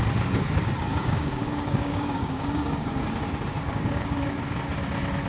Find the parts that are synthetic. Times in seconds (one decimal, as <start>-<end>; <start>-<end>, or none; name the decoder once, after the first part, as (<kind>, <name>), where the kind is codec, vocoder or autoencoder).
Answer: 0.9-3.1 (codec, DAC); 3.5-4.3